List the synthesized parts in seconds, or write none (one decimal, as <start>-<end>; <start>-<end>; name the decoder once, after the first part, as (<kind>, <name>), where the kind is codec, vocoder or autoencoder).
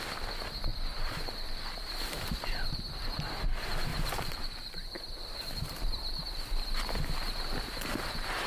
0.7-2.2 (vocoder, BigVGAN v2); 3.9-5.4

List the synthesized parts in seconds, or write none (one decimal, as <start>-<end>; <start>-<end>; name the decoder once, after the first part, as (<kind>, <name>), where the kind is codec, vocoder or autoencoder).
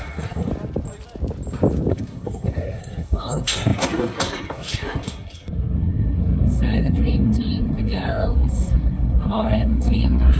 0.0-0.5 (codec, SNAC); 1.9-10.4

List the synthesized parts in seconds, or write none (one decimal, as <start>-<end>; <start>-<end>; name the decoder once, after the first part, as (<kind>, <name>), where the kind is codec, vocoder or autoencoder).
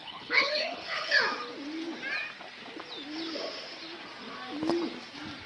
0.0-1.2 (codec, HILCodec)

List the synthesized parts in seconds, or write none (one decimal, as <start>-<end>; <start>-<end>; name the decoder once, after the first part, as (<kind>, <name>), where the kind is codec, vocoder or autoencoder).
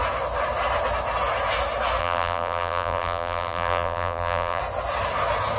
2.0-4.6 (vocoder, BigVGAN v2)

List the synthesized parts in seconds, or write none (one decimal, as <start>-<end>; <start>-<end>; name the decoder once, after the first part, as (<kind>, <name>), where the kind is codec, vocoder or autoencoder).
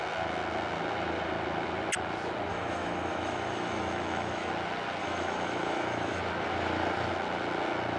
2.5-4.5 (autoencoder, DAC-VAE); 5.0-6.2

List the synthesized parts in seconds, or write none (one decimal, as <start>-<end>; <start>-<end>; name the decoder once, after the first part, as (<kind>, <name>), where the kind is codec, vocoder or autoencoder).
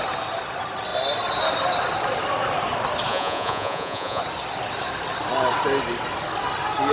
3.1-4.2 (vocoder, Vocos)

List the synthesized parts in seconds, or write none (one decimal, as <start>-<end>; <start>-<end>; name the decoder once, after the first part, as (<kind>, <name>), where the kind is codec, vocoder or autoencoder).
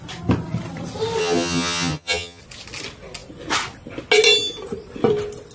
1.2-2.4 (vocoder, HiFi-GAN)